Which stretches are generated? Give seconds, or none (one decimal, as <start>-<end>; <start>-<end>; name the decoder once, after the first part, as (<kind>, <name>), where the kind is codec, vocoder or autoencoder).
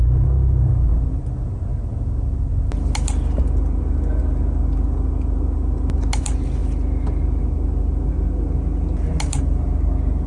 none